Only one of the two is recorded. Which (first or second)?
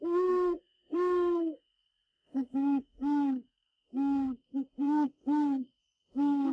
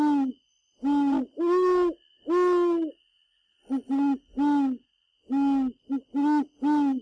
second